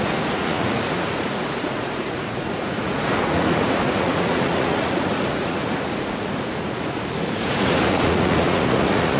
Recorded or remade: remade